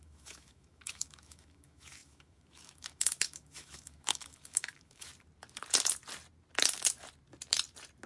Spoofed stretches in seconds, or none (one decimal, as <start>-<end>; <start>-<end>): 0.0-5.1